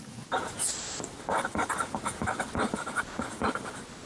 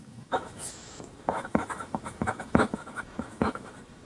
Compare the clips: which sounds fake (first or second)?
second